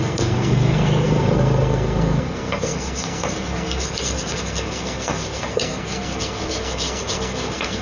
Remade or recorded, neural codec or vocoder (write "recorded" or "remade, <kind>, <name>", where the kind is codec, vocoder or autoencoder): remade, codec, SNAC